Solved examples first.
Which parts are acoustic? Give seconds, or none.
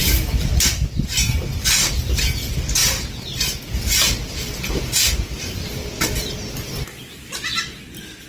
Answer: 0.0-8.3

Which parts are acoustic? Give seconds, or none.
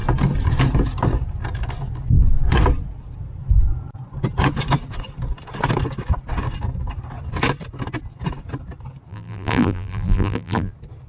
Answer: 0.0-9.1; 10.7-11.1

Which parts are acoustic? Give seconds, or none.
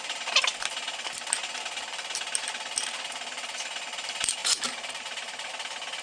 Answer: 0.0-4.4; 5.5-6.0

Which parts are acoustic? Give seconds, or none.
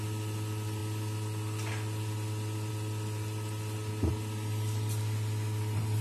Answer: 0.0-6.0